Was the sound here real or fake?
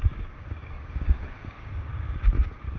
fake